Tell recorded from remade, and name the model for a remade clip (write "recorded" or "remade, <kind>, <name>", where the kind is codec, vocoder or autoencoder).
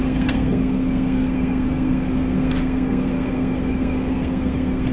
remade, codec, SNAC